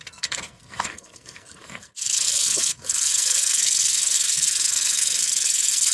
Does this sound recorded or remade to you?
remade